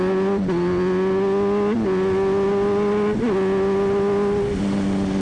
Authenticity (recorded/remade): recorded